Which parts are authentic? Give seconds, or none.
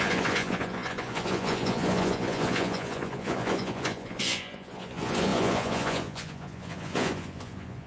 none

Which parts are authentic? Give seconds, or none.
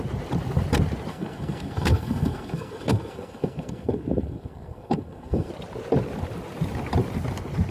0.0-1.1; 5.5-7.7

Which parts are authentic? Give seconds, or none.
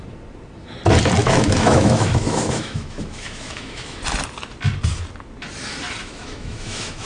0.0-1.2; 4.0-6.0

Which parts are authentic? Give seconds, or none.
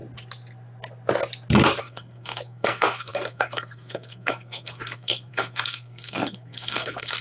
0.0-1.8